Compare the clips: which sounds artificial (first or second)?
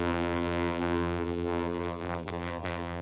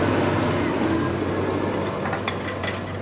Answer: first